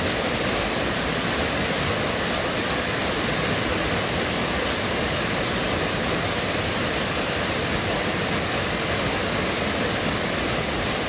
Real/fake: real